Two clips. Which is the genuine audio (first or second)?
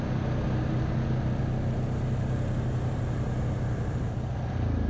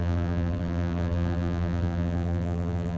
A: first